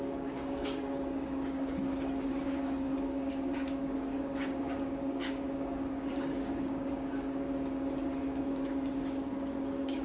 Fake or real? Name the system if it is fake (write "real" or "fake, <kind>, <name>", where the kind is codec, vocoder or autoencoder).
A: fake, codec, DAC